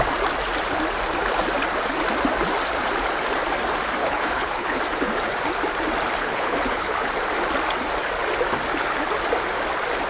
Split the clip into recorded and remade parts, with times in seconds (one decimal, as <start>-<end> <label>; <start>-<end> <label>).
0.0-4.0 recorded; 4.0-4.8 remade; 4.8-6.2 recorded; 6.2-7.1 remade; 7.1-10.1 recorded